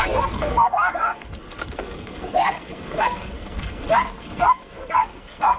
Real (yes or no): no